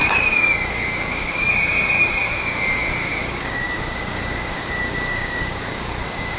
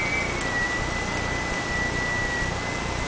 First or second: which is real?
second